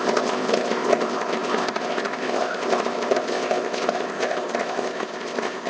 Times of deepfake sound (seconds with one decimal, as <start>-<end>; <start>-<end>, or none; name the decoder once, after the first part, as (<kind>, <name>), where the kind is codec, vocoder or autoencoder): 0.0-5.7 (codec, ZipCodec)